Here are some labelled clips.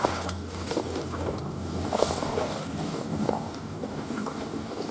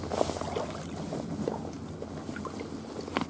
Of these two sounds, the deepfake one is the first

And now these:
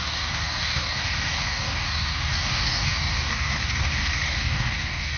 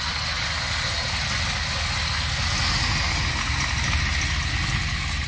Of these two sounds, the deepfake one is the first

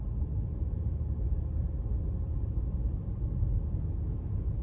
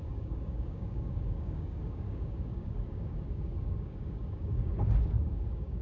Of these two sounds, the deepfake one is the second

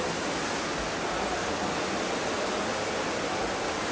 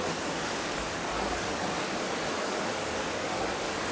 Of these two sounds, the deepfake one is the second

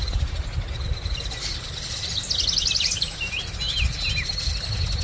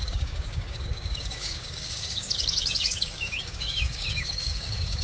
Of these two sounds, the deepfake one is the second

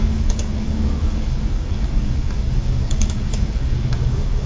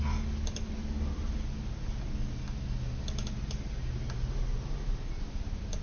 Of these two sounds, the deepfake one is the first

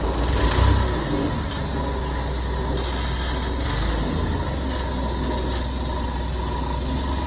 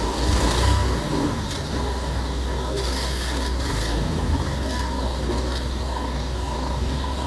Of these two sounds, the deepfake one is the second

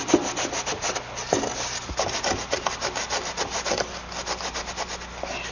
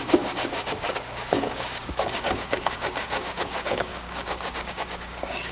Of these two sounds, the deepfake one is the second